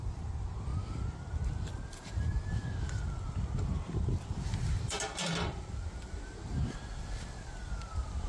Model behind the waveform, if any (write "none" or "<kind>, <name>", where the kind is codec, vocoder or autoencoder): none